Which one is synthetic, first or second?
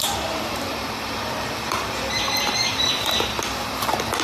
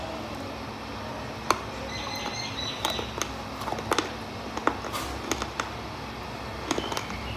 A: first